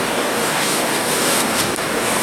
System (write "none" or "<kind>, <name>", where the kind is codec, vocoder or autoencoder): codec, DAC